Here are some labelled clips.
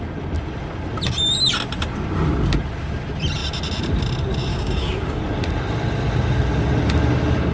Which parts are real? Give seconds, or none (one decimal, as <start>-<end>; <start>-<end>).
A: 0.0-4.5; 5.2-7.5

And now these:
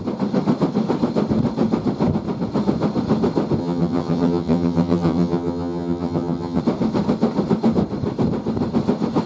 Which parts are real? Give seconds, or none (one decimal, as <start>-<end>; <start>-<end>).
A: 0.0-3.6; 6.6-9.3

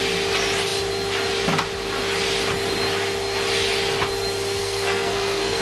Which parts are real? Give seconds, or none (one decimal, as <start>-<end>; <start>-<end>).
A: 0.0-4.6